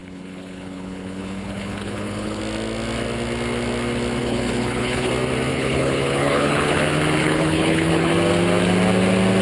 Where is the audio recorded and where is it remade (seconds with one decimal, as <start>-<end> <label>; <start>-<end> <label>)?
0.0-2.4 remade; 2.4-4.2 recorded; 4.2-5.1 remade; 5.1-5.5 recorded; 5.5-6.8 remade; 6.8-7.2 recorded; 7.2-8.1 remade; 8.1-9.4 recorded